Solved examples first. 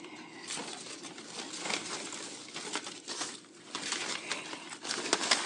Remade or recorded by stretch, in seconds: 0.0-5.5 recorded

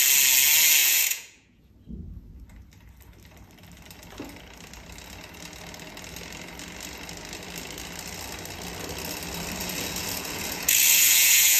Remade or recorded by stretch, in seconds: 0.0-0.8 recorded; 0.8-1.7 remade; 1.7-9.6 recorded; 9.6-11.6 remade

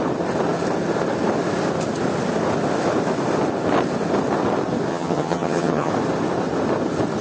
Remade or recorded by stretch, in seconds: 0.0-4.9 recorded; 4.9-5.9 remade; 5.9-7.2 recorded

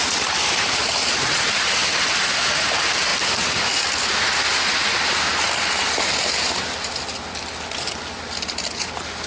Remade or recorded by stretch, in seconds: 0.0-9.3 recorded

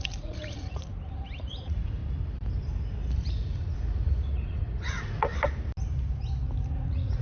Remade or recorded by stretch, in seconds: 0.0-0.9 remade; 0.9-1.4 recorded; 1.4-2.0 remade; 2.0-3.3 recorded; 3.3-5.3 remade; 5.3-6.7 recorded; 6.7-7.2 remade

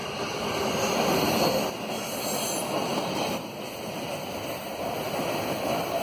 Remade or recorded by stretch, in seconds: 0.0-6.0 recorded